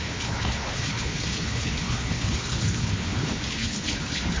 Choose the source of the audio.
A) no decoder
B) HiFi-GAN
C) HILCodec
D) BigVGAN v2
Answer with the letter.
C